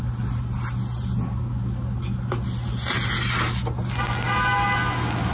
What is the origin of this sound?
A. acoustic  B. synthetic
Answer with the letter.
A